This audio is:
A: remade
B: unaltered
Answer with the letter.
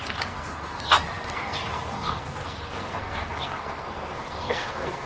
A